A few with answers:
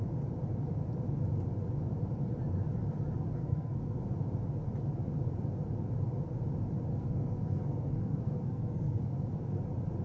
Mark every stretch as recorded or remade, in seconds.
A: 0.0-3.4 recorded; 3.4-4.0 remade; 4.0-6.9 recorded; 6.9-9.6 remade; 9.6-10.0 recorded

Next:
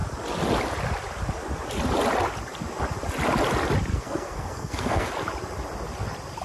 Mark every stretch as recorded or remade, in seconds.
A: 0.0-3.9 recorded; 3.9-5.1 remade; 5.1-6.4 recorded

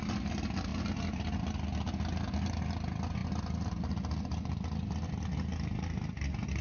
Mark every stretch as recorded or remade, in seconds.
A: 0.0-6.6 recorded

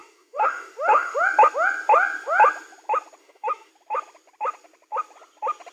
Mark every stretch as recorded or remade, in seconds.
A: 0.0-1.2 remade; 1.2-3.2 recorded; 3.2-3.7 remade; 3.7-5.7 recorded

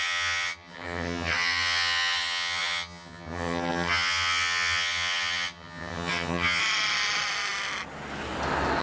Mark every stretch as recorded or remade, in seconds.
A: 0.0-6.6 remade; 6.6-8.8 recorded

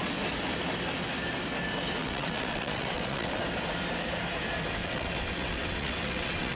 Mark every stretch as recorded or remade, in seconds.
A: 0.0-2.0 recorded; 2.0-3.4 remade; 3.4-4.8 recorded; 4.8-6.6 remade